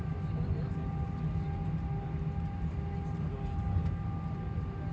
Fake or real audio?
real